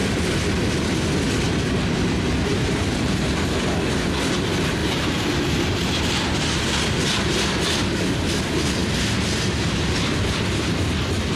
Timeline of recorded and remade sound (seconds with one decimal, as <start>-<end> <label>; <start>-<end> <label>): 0.0-2.5 recorded; 2.5-3.3 remade; 3.3-4.8 recorded; 4.8-6.0 remade; 6.0-11.4 recorded